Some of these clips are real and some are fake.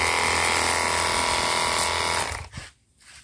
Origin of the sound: real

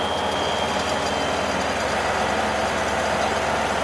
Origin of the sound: real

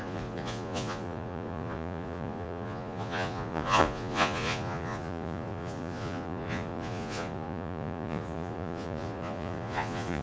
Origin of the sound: fake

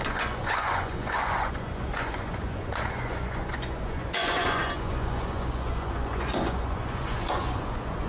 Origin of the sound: fake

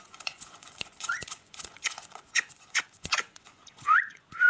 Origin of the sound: fake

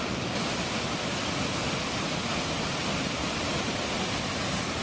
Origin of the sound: real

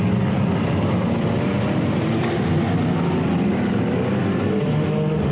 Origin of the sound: real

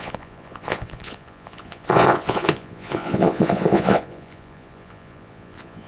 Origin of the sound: fake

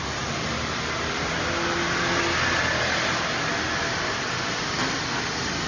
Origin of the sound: real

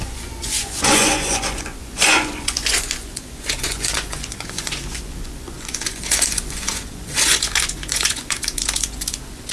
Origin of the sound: fake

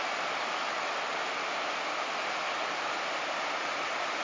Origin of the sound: real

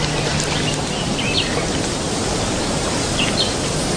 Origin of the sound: real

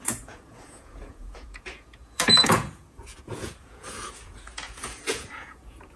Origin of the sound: fake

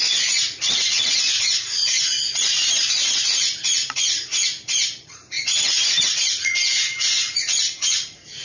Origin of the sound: fake